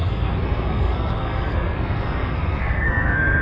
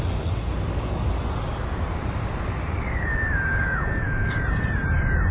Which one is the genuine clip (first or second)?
second